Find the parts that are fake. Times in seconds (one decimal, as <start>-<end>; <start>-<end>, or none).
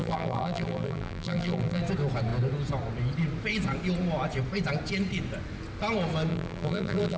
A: 0.0-1.8; 6.3-7.2